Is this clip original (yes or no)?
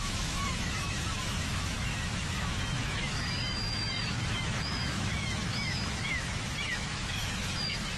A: no